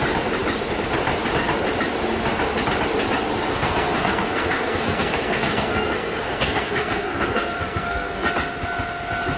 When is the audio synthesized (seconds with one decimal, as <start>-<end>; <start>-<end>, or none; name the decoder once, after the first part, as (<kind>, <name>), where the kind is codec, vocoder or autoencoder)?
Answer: 3.5-8.3 (codec, SNAC)